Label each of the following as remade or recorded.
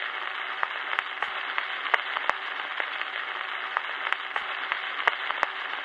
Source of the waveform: recorded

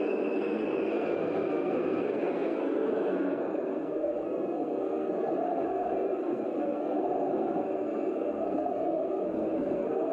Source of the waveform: remade